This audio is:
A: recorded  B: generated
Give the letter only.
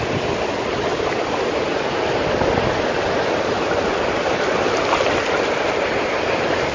A